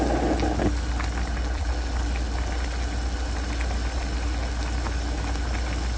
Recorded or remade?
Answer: recorded